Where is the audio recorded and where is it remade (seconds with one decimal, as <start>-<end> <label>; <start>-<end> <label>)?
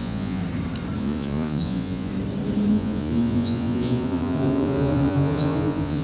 0.0-0.4 remade; 0.4-1.0 recorded; 1.0-2.1 remade; 2.1-2.7 recorded; 2.7-6.0 remade